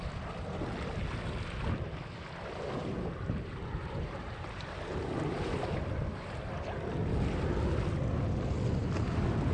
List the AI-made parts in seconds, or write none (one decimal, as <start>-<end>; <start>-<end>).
2.8-5.5